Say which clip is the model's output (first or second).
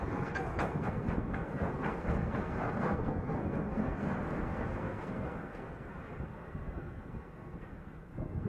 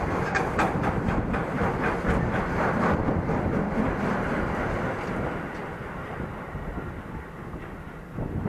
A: first